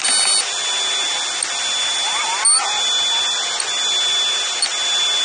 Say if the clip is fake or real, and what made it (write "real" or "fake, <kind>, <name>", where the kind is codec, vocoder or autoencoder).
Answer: real